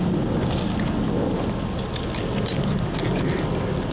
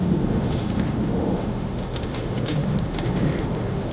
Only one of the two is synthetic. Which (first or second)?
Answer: second